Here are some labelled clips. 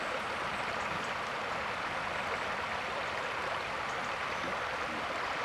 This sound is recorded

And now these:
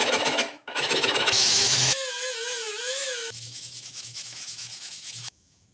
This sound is remade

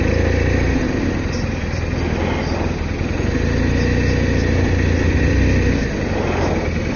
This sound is recorded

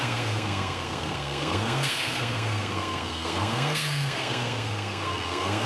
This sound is remade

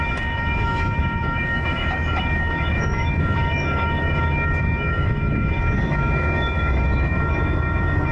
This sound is remade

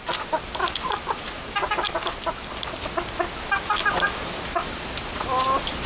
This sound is recorded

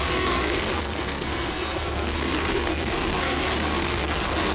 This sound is remade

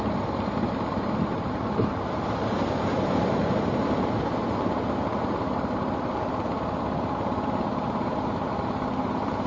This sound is remade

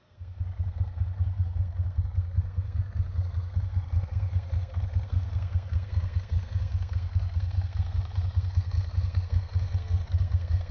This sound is remade